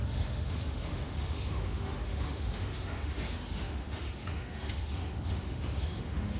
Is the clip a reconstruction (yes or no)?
yes